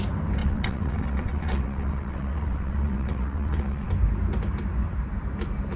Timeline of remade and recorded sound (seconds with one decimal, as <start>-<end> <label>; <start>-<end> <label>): 0.0-0.4 recorded; 0.4-3.9 remade; 3.9-5.8 recorded